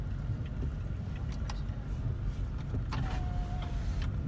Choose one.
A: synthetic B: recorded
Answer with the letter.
B